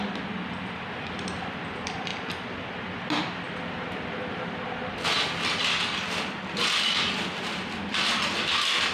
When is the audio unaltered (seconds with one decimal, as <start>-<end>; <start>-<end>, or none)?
0.0-8.9